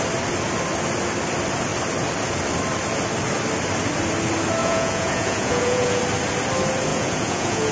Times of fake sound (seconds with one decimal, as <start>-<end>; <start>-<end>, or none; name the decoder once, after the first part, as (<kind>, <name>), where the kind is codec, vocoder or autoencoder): 4.6-6.0 (vocoder, Vocos); 6.9-7.7